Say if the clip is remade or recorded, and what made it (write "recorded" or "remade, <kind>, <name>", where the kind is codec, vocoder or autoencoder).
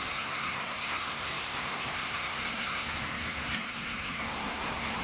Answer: remade, codec, SNAC